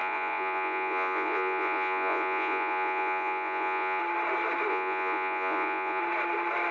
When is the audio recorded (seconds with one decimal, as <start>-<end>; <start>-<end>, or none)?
4.0-4.7; 6.0-6.7

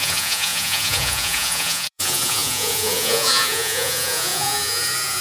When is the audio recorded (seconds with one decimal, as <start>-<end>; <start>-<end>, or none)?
none

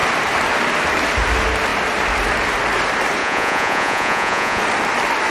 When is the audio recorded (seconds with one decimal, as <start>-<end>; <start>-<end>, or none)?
0.0-3.2; 4.6-5.3

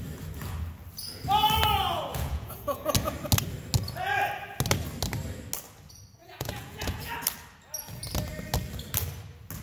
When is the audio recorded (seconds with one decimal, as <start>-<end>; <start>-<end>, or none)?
0.0-2.1; 2.8-6.2; 7.1-9.6

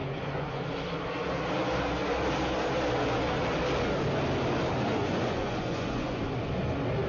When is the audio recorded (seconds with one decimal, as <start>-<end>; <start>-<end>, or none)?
0.6-4.9; 6.2-7.1

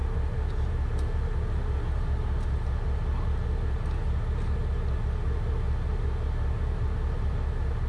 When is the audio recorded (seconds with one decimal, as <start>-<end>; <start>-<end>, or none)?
0.0-7.9

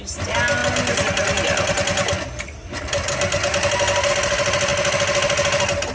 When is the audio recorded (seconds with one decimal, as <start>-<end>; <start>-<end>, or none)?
0.0-5.9